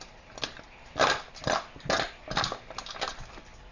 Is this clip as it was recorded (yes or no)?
yes